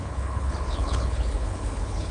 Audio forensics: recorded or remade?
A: remade